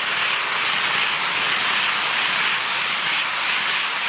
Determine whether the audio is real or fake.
real